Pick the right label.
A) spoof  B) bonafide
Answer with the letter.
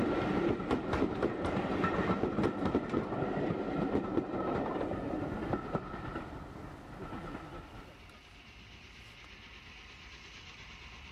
B